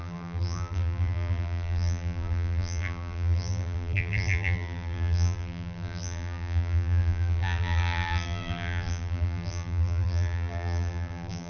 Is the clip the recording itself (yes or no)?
no